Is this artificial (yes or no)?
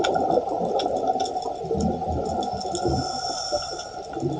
no